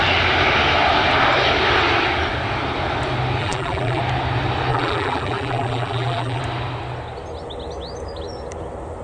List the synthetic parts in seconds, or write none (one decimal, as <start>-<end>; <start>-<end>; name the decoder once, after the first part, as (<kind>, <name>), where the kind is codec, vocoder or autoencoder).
3.4-4.0 (vocoder, BigVGAN v2); 4.7-6.4